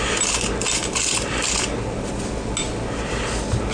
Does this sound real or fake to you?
real